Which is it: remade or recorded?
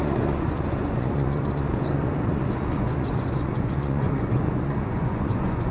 remade